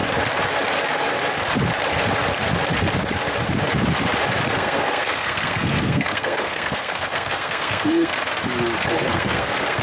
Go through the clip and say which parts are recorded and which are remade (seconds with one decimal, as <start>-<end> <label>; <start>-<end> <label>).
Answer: 0.0-4.5 recorded; 4.5-8.1 remade; 8.1-9.1 recorded; 9.1-9.8 remade